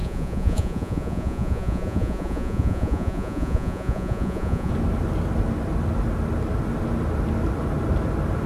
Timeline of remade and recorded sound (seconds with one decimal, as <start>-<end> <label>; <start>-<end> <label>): 0.0-4.7 remade; 4.7-8.5 recorded